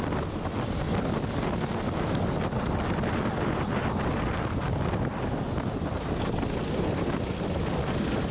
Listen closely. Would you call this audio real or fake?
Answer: real